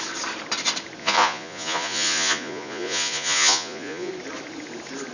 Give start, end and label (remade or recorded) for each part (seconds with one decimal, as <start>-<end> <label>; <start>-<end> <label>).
0.0-1.0 recorded; 1.0-4.1 remade; 4.1-5.1 recorded